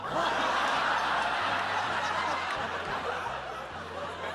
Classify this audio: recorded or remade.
recorded